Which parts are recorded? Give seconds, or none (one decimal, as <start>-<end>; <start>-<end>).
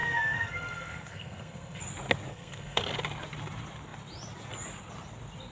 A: 1.8-2.3; 2.8-5.5